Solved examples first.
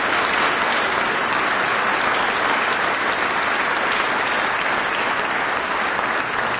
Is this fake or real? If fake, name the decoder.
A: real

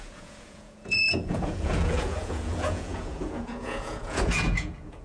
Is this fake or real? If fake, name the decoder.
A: fake, vocoder, Vocos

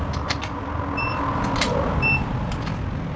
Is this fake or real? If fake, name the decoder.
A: real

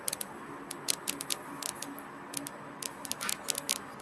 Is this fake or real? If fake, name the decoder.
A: real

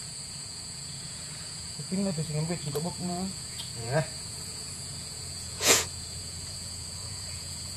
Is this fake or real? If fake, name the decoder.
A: fake, vocoder, Vocos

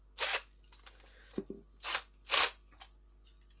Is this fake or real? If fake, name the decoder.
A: real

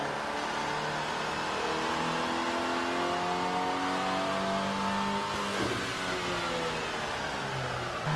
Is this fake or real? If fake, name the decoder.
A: real